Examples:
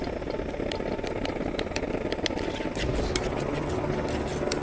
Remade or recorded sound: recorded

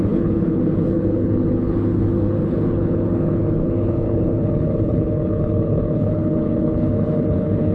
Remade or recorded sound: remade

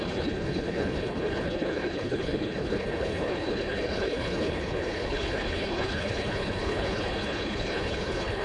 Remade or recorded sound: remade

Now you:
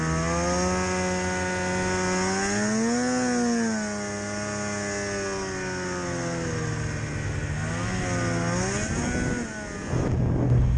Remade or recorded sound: recorded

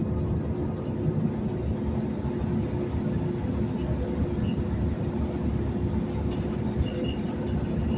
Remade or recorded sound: recorded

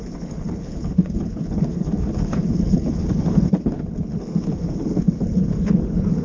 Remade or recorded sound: remade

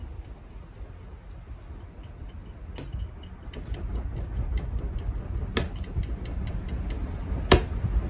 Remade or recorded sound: recorded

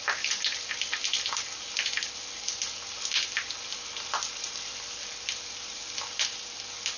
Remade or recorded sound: recorded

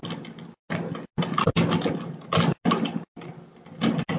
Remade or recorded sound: recorded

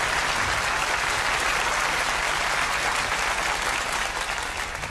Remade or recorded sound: recorded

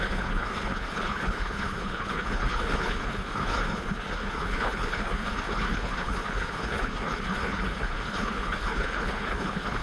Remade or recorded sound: remade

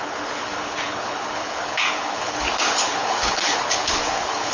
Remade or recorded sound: remade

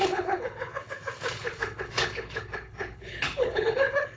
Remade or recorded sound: remade